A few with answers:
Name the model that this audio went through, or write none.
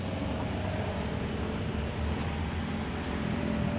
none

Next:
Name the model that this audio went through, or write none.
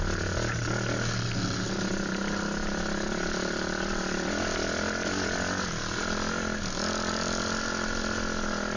none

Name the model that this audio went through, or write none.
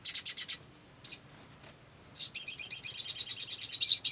none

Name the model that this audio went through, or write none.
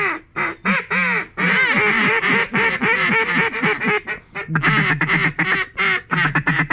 none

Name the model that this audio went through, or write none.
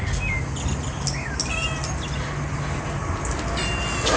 none